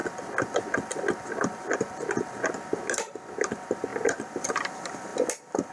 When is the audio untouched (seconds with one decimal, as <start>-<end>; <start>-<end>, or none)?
0.0-5.7